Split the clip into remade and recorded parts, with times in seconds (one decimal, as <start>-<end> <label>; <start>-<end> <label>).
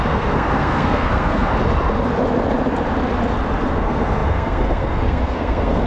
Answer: 0.0-1.5 remade; 1.5-3.7 recorded; 3.7-5.9 remade